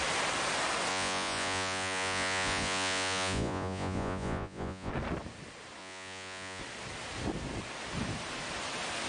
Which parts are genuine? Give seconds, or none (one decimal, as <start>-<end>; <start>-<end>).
0.0-0.9; 4.9-5.8; 6.6-9.1